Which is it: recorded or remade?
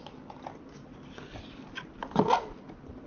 recorded